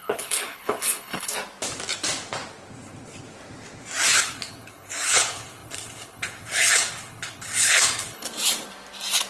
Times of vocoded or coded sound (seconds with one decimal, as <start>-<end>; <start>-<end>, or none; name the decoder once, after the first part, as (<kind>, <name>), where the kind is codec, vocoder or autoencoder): 0.0-1.3 (codec, HILCodec); 4.2-8.3